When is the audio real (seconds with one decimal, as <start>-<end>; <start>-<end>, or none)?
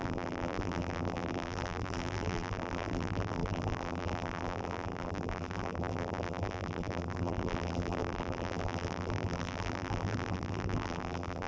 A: none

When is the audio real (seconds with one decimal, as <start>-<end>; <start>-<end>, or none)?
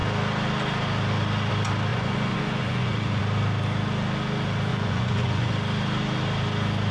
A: 0.0-1.9; 3.2-4.7; 5.5-6.9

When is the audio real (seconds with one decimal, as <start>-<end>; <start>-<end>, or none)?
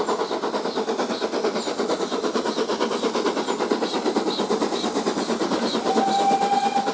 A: 0.0-6.9